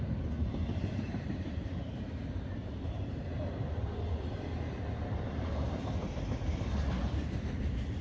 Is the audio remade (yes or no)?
yes